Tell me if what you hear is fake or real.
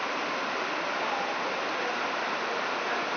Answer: real